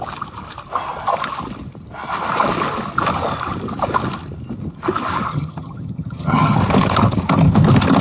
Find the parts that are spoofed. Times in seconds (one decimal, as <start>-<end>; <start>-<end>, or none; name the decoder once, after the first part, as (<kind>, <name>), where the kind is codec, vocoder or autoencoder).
5.3-6.6 (vocoder, HiFi-GAN)